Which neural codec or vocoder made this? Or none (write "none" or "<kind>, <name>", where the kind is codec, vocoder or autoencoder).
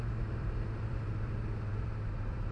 vocoder, BigVGAN v2